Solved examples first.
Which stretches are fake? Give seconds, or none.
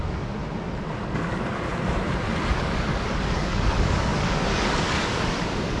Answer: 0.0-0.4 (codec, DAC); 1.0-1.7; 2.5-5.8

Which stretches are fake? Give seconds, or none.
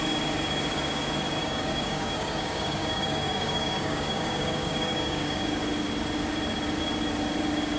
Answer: 1.4-5.6 (codec, DAC)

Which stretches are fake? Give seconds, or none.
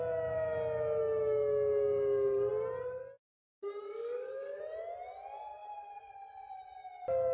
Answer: 1.0-2.5 (codec, DAC); 3.4-4.6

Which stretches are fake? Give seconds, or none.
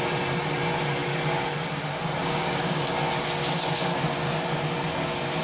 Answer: 2.2-2.8 (codec, DAC)